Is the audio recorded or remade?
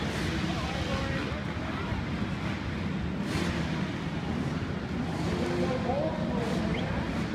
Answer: recorded